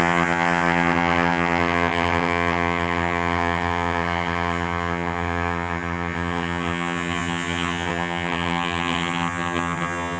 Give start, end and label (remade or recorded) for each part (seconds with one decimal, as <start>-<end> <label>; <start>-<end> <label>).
0.0-10.2 remade